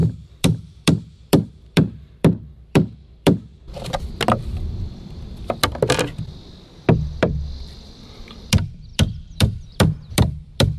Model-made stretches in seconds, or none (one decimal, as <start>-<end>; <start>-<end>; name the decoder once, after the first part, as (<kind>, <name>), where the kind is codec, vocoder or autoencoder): 0.0-3.5 (vocoder, BigVGAN v2); 7.2-10.8